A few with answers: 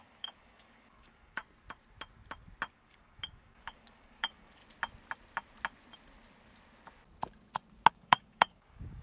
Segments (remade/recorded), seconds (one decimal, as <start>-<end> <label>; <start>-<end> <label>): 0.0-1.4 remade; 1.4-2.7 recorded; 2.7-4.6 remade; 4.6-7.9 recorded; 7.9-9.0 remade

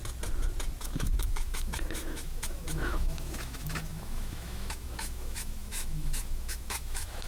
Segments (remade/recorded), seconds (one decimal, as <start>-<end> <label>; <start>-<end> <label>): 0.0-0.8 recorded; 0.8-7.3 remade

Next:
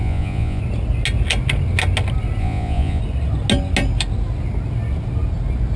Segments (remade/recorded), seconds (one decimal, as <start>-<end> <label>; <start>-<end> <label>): 0.0-0.6 remade; 0.6-2.4 recorded; 2.4-3.0 remade; 3.0-5.8 recorded

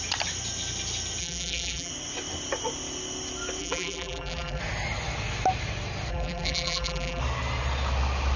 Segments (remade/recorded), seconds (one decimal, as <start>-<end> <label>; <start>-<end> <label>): 0.0-1.2 recorded; 1.2-1.9 remade; 1.9-3.6 recorded; 3.6-4.6 remade; 4.6-6.1 recorded; 6.1-7.2 remade; 7.2-8.4 recorded

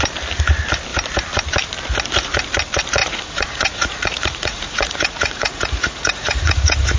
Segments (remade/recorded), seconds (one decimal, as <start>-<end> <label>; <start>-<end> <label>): 0.0-3.0 recorded; 3.0-7.0 remade

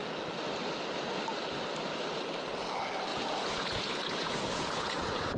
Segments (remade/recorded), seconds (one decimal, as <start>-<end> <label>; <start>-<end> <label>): 0.0-3.1 recorded; 3.1-5.4 remade

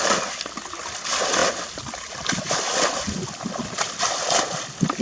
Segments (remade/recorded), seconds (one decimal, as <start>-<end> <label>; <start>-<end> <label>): 0.0-5.0 recorded